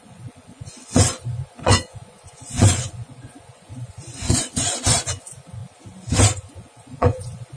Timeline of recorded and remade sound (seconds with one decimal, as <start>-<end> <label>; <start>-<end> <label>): 0.0-5.6 remade; 5.6-6.5 recorded; 6.5-7.6 remade